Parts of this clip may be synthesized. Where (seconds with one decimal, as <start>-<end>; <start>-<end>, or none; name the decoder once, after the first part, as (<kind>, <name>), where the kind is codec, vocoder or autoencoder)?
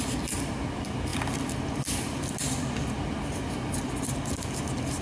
none